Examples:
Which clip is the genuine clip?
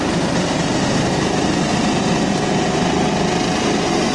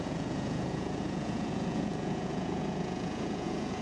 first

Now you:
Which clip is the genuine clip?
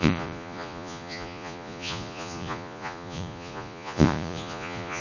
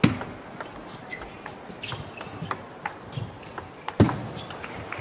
second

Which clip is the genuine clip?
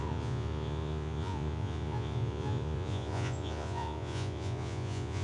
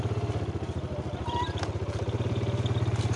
second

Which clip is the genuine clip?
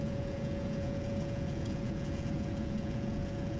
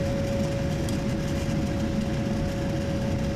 second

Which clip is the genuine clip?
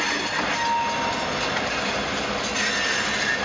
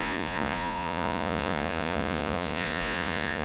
first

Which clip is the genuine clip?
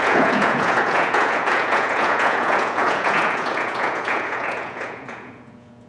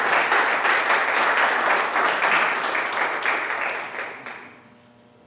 second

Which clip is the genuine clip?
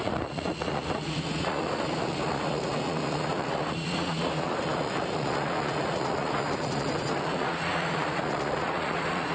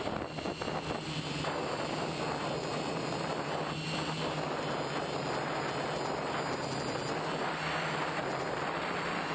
second